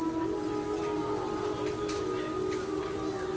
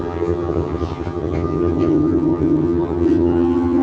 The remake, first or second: second